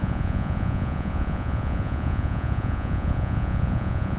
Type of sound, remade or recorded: remade